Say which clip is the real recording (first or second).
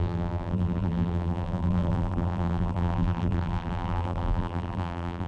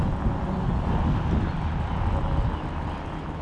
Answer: second